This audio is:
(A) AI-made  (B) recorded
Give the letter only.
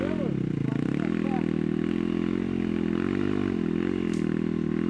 B